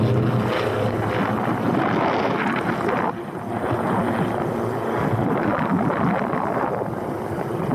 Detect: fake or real real